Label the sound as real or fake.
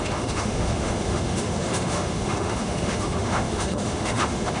fake